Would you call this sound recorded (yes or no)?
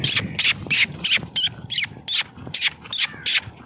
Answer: yes